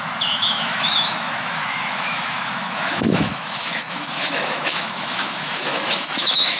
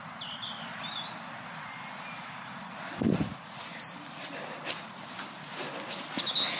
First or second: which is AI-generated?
first